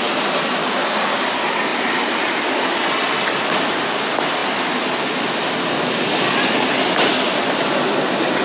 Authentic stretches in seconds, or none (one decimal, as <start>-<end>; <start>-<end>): 0.0-0.6; 1.2-8.4